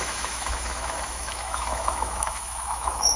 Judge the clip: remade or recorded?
remade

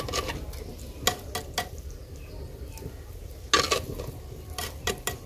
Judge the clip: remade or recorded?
recorded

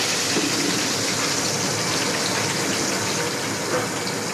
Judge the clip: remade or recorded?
recorded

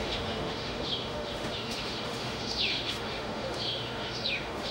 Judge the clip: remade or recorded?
remade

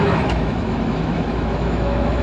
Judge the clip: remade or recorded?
remade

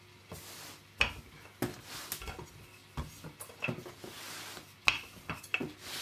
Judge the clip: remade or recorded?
recorded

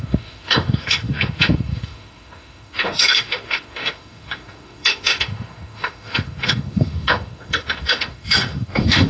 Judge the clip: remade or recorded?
remade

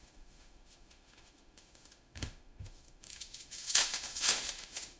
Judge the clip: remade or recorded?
remade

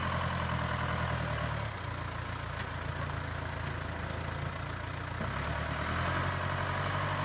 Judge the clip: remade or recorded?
recorded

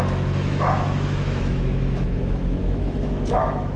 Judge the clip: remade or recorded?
remade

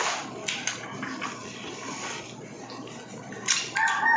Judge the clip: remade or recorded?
recorded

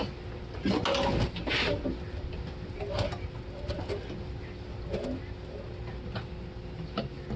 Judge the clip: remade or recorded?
recorded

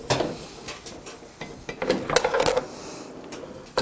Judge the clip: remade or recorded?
recorded